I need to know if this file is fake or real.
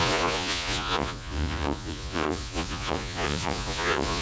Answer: fake